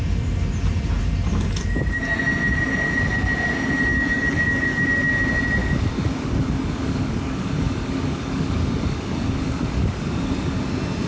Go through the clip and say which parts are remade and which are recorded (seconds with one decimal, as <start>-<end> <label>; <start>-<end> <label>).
0.0-3.9 recorded; 3.9-4.8 remade; 4.8-5.6 recorded; 5.6-10.5 remade; 10.5-11.1 recorded

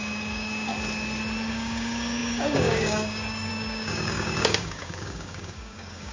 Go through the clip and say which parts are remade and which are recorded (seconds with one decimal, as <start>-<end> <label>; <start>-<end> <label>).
0.0-0.7 remade; 0.7-1.5 recorded; 1.5-6.1 remade

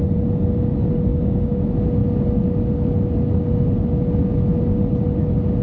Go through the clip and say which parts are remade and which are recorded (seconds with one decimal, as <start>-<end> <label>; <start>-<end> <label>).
0.0-1.1 recorded; 1.1-1.6 remade; 1.6-5.6 recorded

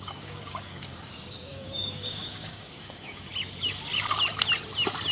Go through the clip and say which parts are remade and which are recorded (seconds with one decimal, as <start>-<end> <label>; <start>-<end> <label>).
0.0-3.3 remade; 3.3-5.1 recorded

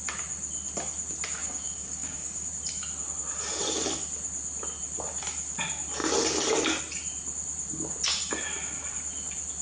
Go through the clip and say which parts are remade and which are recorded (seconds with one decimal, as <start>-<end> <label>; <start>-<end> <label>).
0.0-1.4 recorded; 1.4-2.5 remade; 2.5-9.6 recorded

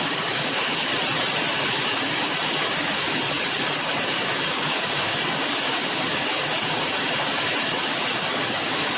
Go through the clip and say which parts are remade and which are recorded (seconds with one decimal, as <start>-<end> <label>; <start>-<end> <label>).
0.0-0.9 remade; 0.9-1.5 recorded; 1.5-9.0 remade

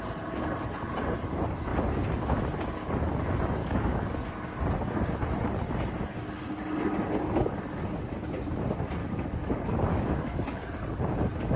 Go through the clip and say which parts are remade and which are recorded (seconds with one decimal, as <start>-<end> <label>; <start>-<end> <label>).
0.0-3.6 recorded; 3.6-4.6 remade; 4.6-9.0 recorded; 9.0-11.0 remade; 11.0-11.6 recorded